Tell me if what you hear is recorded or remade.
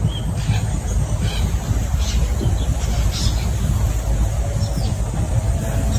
recorded